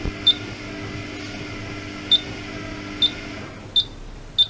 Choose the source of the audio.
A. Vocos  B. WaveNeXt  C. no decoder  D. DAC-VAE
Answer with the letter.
C